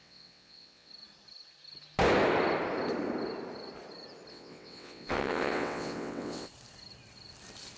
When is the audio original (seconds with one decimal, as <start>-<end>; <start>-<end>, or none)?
0.9-4.3; 6.5-7.8